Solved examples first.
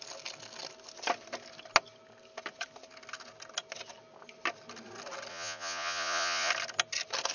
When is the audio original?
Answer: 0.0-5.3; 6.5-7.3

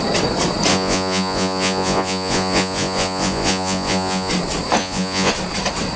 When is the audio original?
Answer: 0.0-0.7; 4.3-4.8; 5.3-6.0

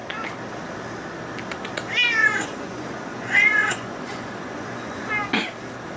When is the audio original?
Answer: 0.0-2.2; 5.1-6.0

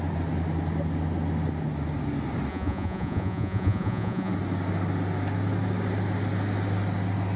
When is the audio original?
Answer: 0.0-2.5; 4.3-7.4